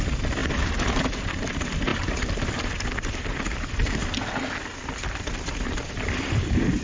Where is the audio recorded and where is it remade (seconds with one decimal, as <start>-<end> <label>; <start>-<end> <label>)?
0.0-4.0 remade; 4.0-4.8 recorded; 4.8-6.8 remade

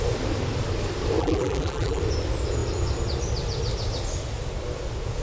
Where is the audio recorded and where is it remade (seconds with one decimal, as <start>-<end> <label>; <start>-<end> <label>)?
0.0-1.2 recorded; 1.2-2.0 remade; 2.0-5.2 recorded

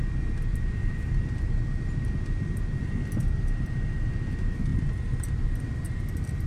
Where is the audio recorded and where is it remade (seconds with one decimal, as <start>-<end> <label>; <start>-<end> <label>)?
0.0-0.5 recorded; 0.5-1.5 remade; 1.5-4.7 recorded; 4.7-6.5 remade

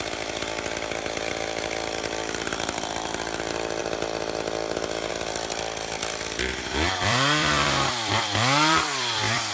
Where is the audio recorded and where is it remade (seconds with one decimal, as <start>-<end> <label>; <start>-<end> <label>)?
0.0-3.8 remade; 3.8-5.1 recorded; 5.1-9.5 remade

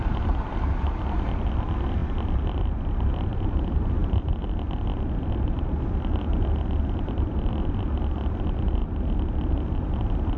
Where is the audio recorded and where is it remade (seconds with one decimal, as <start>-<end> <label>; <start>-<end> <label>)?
0.0-8.8 remade; 8.8-9.5 recorded; 9.5-10.4 remade